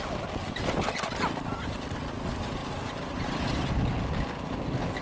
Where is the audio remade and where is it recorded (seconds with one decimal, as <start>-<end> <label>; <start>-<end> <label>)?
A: 0.0-5.0 recorded